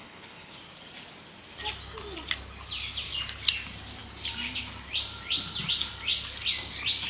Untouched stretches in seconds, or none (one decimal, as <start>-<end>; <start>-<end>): 0.6-7.1